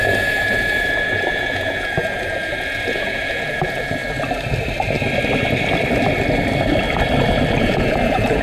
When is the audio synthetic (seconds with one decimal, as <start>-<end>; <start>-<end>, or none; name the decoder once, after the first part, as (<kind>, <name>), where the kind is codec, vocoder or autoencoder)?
0.0-4.0 (vocoder, Vocos); 7.6-8.4